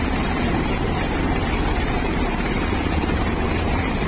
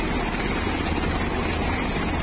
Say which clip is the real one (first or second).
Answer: second